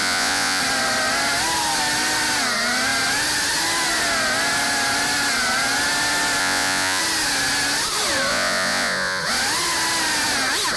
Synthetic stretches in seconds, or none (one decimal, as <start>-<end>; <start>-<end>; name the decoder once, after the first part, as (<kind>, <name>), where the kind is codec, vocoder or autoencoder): 0.0-0.6 (vocoder, Vocos); 6.4-7.0; 8.3-9.2